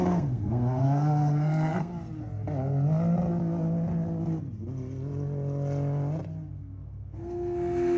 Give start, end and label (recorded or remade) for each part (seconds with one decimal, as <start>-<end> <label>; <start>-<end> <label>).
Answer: 0.0-1.9 remade; 1.9-6.5 recorded; 6.5-8.0 remade

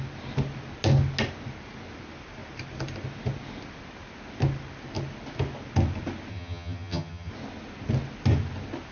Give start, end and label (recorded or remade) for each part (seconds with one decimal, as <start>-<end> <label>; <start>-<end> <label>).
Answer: 0.0-6.3 recorded; 6.3-7.3 remade; 7.3-8.9 recorded

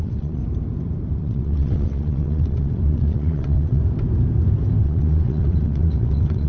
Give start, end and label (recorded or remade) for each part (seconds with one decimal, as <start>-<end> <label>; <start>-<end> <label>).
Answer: 0.0-0.4 remade; 0.4-1.2 recorded; 1.2-3.8 remade; 3.8-4.8 recorded; 4.8-6.5 remade

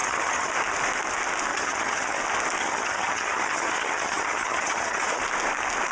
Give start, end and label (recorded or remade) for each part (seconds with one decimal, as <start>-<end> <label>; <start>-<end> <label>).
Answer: 0.0-0.5 remade; 0.5-1.5 recorded; 1.5-2.2 remade; 2.2-2.6 recorded; 2.6-5.2 remade; 5.2-5.9 recorded

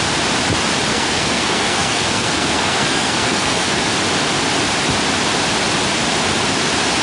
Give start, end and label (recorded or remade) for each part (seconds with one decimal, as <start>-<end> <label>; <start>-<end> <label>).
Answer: 0.0-0.9 recorded; 0.9-3.8 remade; 3.8-7.0 recorded